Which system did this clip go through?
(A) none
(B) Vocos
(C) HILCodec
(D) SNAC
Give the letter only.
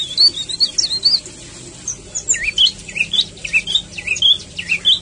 A